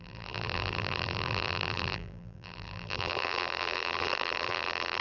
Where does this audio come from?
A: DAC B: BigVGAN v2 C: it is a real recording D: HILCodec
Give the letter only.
B